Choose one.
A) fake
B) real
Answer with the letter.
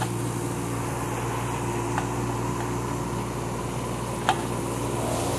B